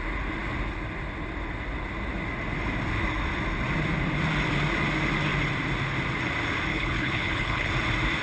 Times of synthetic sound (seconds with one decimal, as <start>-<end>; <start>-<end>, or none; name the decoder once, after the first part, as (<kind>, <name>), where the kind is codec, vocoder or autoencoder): 6.7-7.7 (codec, HILCodec)